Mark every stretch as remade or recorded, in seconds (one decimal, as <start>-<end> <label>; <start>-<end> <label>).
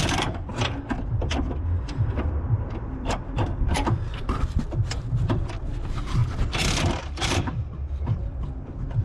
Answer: 0.0-0.5 remade; 0.5-1.8 recorded; 1.8-6.2 remade; 6.2-7.0 recorded; 7.0-9.0 remade